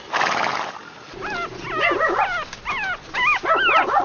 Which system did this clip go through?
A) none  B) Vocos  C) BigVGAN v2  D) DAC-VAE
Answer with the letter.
A